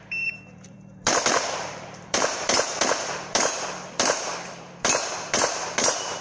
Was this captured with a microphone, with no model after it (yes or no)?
no